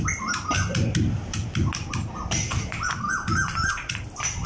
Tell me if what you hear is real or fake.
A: real